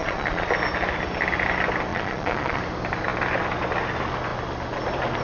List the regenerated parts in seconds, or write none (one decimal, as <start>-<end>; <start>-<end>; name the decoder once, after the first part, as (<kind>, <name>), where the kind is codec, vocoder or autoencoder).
0.0-0.5 (vocoder, Vocos); 1.9-2.6